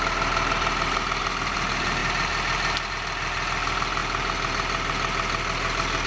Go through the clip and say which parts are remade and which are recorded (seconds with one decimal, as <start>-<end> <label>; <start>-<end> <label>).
0.0-6.1 recorded